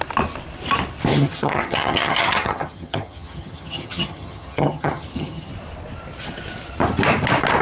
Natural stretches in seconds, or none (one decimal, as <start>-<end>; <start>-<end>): 0.0-1.1; 5.5-7.6